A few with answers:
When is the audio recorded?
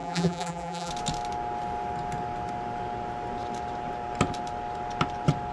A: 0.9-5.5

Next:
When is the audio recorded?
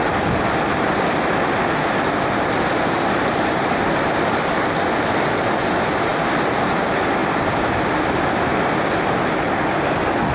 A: 0.0-10.3